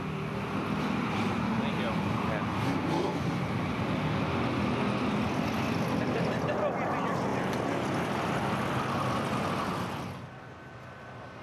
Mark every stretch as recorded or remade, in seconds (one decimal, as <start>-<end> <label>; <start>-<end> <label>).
0.0-11.4 recorded